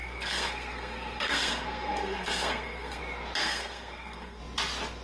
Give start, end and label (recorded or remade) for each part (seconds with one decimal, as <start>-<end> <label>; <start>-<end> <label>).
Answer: 0.0-3.0 remade; 3.0-3.4 recorded; 3.4-4.4 remade; 4.4-5.0 recorded